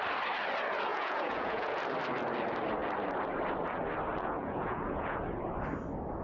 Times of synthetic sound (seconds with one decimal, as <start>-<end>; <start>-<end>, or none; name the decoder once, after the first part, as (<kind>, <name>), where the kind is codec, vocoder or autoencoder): 0.9-1.8 (vocoder, Vocos); 4.1-5.2